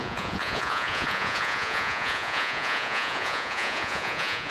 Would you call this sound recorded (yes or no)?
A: no